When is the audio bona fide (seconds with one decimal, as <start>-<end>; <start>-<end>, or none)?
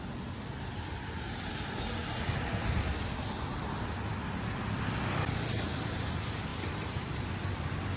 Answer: 0.0-6.5; 7.0-8.0